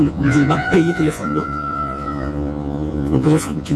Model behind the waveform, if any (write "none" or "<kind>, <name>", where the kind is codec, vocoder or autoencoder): vocoder, Vocos